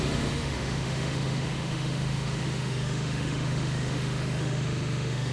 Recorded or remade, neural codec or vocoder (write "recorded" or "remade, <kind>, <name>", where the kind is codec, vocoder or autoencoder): remade, autoencoder, DAC-VAE